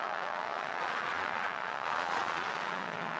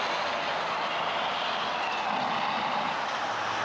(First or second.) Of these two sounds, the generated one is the first